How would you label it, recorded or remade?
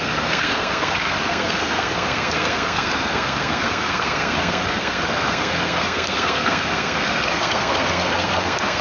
remade